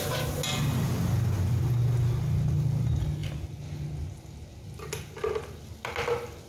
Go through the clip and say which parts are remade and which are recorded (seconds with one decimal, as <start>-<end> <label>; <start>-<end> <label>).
0.0-6.5 recorded